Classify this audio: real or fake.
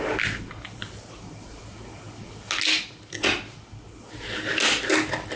real